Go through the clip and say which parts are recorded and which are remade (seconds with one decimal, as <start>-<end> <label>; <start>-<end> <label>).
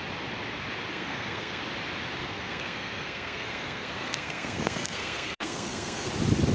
0.0-0.9 recorded; 0.9-1.6 remade; 1.6-2.2 recorded; 2.2-6.1 remade; 6.1-6.5 recorded